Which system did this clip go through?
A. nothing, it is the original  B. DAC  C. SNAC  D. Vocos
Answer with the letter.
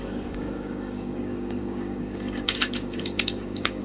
B